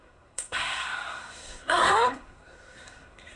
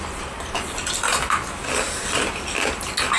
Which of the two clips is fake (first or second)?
first